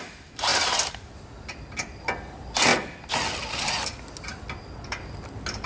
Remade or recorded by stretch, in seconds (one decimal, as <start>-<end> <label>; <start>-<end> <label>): 0.0-5.7 recorded